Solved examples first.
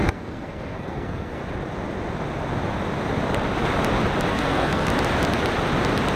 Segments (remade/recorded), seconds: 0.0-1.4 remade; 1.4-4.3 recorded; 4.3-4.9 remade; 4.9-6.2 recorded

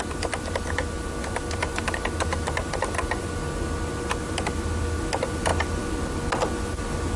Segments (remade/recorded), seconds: 0.0-7.2 recorded

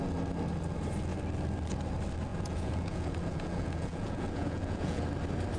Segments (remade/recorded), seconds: 0.0-2.3 recorded; 2.3-5.0 remade; 5.0-5.6 recorded

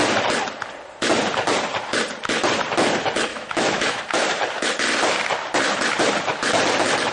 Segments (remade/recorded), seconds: 0.0-3.3 recorded; 3.3-4.0 remade; 4.0-7.1 recorded